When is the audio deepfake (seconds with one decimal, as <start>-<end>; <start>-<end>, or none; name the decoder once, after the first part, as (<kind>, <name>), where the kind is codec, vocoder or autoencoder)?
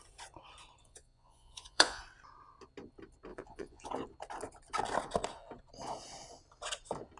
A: 0.8-2.0 (vocoder, Vocos); 3.3-3.9